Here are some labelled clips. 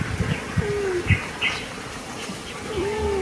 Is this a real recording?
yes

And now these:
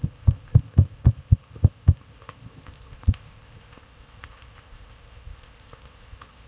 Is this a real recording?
no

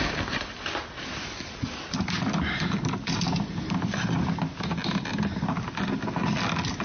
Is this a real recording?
yes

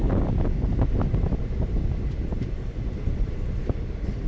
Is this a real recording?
yes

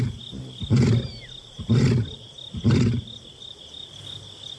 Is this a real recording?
yes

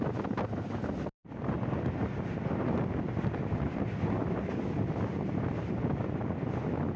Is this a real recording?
yes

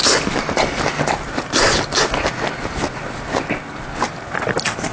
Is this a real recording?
yes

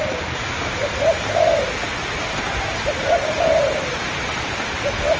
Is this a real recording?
yes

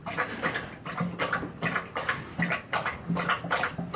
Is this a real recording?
yes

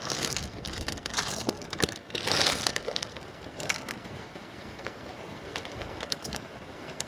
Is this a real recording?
no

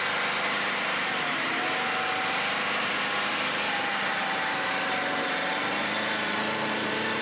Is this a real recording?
yes